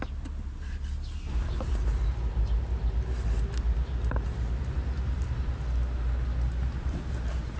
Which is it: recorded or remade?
recorded